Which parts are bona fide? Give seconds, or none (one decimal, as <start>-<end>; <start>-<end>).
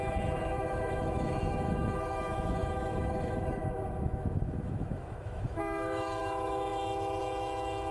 none